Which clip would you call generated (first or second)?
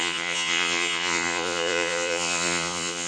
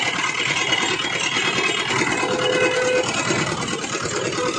first